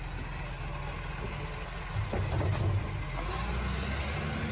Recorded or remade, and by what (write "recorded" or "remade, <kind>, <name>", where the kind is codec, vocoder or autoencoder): recorded